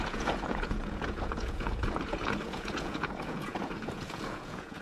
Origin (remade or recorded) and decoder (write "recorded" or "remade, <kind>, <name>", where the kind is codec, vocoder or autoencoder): remade, vocoder, Vocos